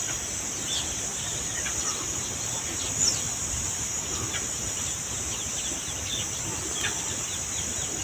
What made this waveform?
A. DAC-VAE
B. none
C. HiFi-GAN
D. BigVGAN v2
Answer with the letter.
B